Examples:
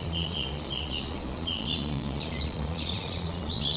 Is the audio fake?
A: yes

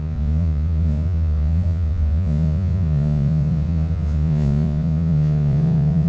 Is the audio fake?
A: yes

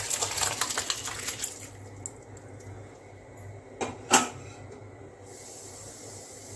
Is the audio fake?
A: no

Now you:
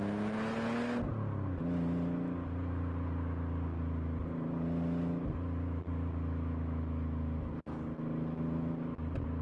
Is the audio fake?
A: no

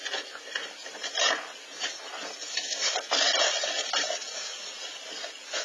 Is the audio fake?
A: no